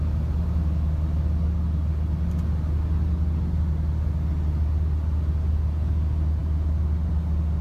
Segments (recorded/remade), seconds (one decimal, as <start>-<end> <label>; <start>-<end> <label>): 0.0-7.6 recorded